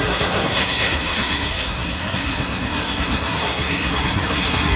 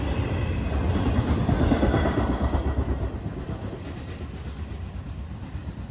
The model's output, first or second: first